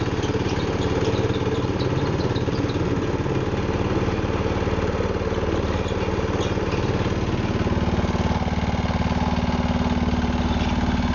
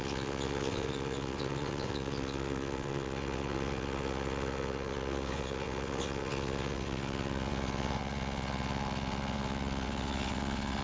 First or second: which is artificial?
second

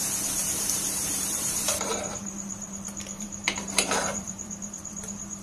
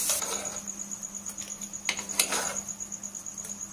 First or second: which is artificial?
first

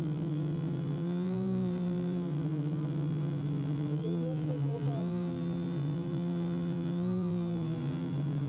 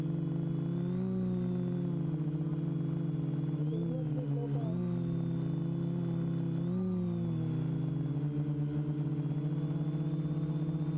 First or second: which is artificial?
first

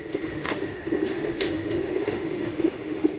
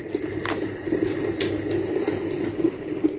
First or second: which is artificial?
first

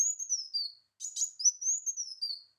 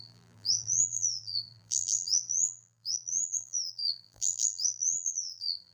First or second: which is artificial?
second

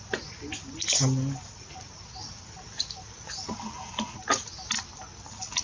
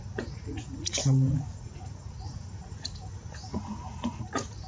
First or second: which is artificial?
second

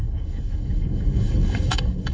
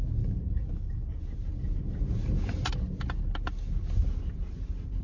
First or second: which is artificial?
first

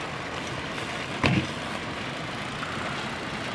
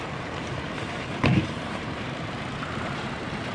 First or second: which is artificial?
second